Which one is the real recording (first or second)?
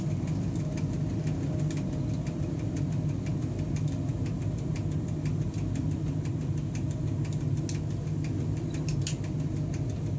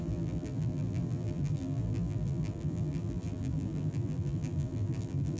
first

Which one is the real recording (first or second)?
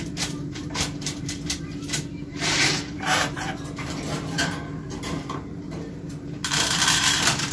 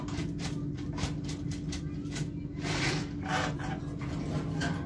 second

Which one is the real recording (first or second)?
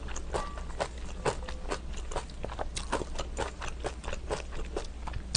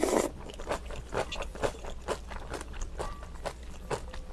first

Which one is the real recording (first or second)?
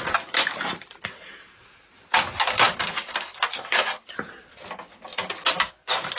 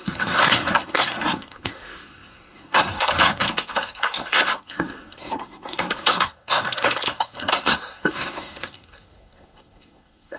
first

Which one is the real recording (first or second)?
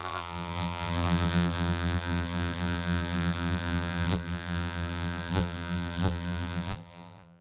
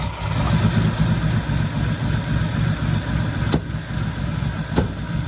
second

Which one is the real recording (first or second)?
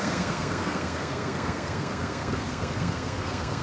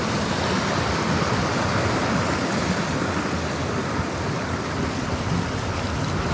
second